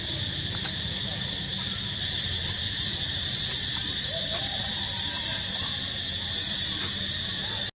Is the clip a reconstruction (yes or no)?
no